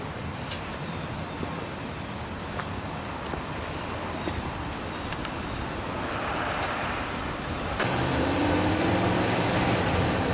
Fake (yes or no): yes